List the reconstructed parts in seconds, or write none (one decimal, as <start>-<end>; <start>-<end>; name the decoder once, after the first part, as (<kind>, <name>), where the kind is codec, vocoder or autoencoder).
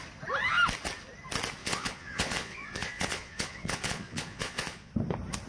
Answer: 1.6-4.9 (vocoder, Vocos)